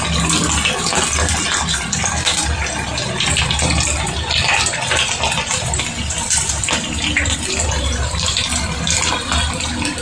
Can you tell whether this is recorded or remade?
recorded